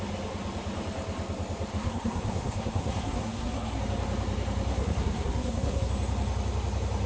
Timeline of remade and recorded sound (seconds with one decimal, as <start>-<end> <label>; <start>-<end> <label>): 0.0-1.7 recorded; 1.7-3.8 remade; 3.8-4.7 recorded; 4.7-5.9 remade; 5.9-7.1 recorded